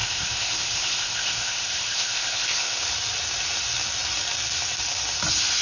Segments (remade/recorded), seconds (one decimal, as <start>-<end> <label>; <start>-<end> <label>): 0.0-2.8 remade; 2.8-5.6 recorded